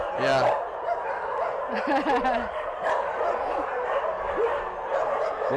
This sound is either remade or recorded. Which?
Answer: recorded